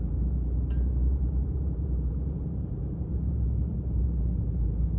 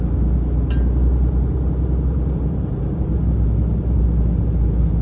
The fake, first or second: first